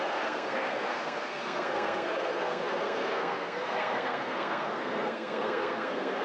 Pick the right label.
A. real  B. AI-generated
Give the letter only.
B